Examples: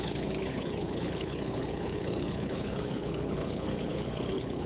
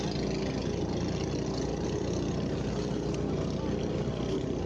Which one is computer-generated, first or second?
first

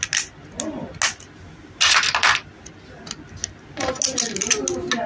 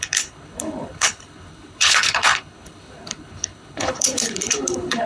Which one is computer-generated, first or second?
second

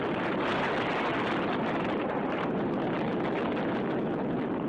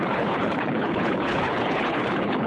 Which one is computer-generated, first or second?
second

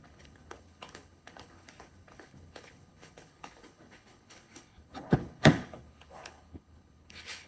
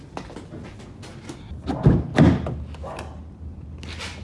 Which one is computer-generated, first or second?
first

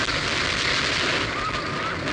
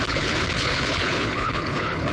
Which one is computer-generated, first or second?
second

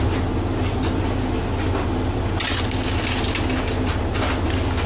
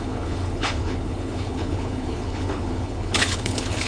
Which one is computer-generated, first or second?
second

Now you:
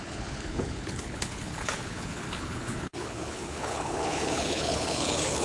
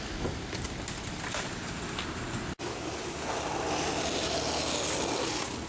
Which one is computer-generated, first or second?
first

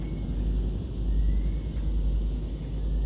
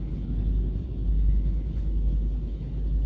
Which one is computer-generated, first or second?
second